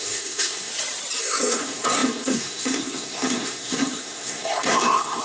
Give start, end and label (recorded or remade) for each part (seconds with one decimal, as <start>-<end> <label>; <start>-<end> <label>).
0.0-0.7 remade; 0.7-1.2 recorded; 1.2-5.2 remade